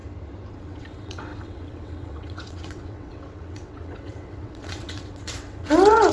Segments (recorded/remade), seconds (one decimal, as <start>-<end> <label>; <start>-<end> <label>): 0.0-0.5 recorded; 0.5-6.1 remade